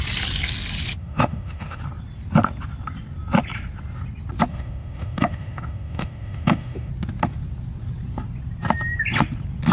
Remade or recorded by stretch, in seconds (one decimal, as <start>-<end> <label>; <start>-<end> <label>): 0.0-1.0 recorded; 1.0-1.8 remade; 1.8-4.5 recorded; 4.5-6.9 remade; 6.9-9.7 recorded

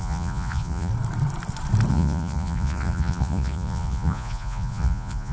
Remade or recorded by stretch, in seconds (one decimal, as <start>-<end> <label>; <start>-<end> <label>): 0.0-0.9 remade; 0.9-1.9 recorded; 1.9-5.3 remade

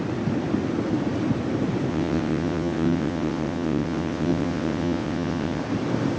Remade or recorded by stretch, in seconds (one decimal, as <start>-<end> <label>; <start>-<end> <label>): 0.0-1.9 recorded; 1.9-5.6 remade; 5.6-6.2 recorded